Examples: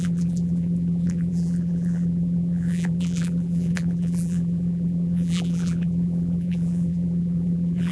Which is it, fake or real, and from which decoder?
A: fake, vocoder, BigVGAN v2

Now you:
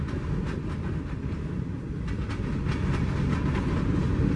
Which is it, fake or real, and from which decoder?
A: real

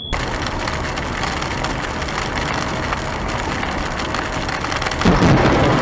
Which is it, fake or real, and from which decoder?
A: real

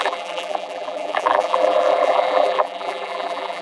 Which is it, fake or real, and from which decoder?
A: fake, vocoder, BigVGAN v2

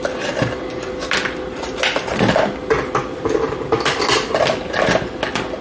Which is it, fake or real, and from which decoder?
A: fake, vocoder, BigVGAN v2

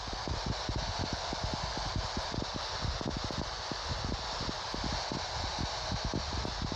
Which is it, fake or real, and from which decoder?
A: real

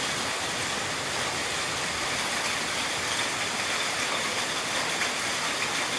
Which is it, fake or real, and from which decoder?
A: real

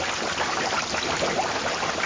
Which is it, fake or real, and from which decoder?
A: real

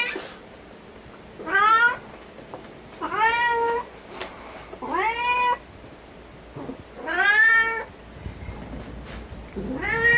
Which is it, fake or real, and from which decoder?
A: real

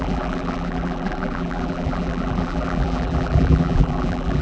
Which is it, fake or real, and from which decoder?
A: fake, vocoder, BigVGAN v2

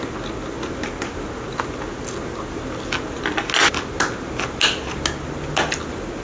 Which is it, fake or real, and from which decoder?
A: real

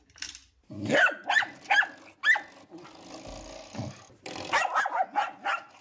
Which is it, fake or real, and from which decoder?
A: real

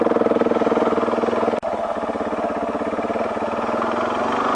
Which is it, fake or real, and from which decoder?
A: real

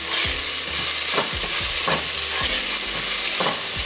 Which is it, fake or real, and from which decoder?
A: real